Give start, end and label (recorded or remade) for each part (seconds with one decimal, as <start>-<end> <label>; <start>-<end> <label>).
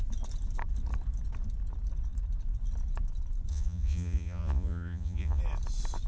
0.0-3.5 recorded; 3.5-5.4 remade; 5.4-6.1 recorded